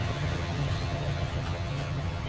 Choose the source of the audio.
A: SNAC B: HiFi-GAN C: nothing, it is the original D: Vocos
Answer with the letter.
B